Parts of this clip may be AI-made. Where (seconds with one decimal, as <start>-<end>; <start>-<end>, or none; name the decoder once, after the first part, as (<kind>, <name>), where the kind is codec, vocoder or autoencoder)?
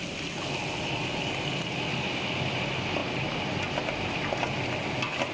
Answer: none